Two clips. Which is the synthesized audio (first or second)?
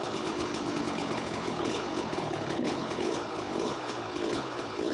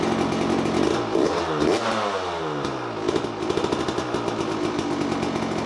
first